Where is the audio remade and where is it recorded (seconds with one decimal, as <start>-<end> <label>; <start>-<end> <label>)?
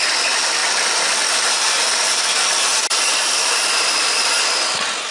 0.0-0.6 remade; 0.6-2.0 recorded; 2.0-5.1 remade